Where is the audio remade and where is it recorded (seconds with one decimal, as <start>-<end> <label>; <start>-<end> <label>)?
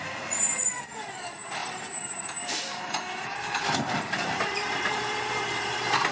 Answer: 0.0-6.1 remade